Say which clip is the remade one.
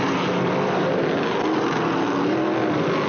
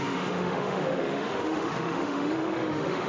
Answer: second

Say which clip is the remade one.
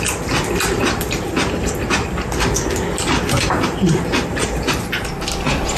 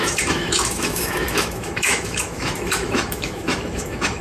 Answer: second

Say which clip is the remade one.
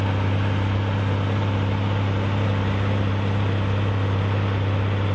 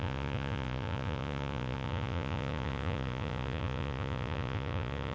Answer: second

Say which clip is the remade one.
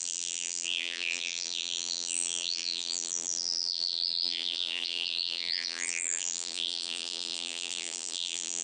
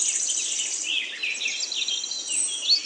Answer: first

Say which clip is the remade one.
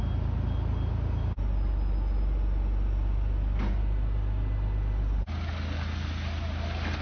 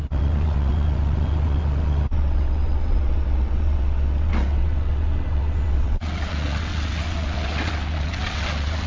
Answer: second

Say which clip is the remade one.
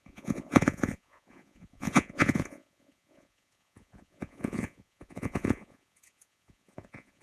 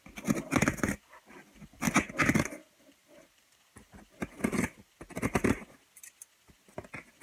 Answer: first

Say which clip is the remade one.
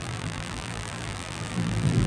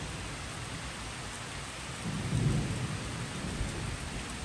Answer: first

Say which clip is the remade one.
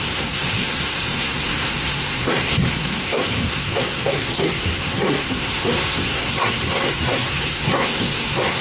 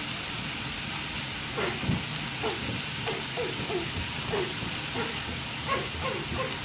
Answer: first